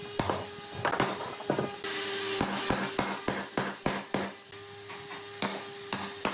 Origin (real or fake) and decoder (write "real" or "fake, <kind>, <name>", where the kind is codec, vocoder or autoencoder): real